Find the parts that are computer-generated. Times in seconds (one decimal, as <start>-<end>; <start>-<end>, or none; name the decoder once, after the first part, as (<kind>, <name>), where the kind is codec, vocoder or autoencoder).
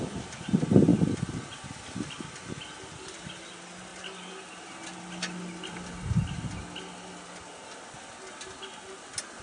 none